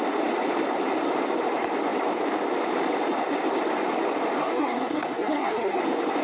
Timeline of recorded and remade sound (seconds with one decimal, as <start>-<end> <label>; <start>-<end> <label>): 0.0-4.4 recorded; 4.4-5.8 remade; 5.8-6.2 recorded

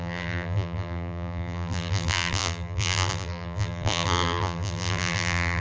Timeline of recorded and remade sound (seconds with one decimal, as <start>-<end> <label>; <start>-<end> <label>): 0.0-5.6 remade